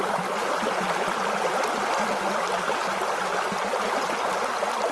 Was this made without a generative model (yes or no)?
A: yes